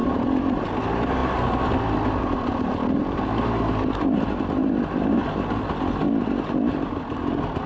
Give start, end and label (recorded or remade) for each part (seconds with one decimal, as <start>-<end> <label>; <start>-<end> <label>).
0.0-7.7 recorded